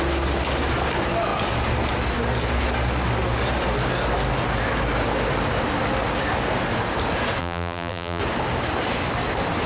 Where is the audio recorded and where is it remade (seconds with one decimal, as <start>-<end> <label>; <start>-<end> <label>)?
0.0-7.4 recorded; 7.4-8.2 remade; 8.2-9.7 recorded